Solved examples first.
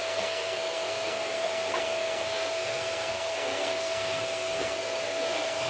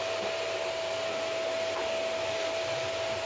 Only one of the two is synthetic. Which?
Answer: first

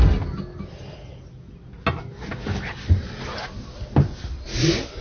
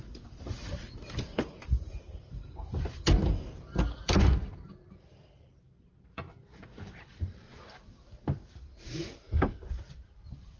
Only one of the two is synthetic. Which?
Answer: second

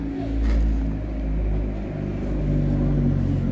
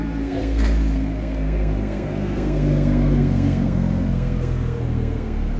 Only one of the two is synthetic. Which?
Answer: second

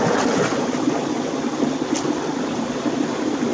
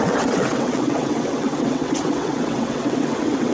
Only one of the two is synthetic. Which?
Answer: second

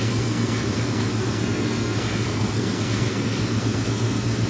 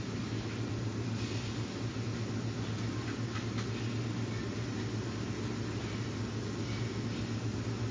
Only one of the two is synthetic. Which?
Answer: first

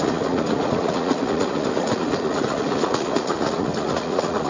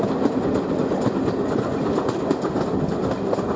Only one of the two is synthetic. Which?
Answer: first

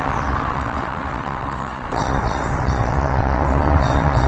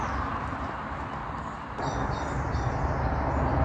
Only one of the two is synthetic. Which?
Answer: first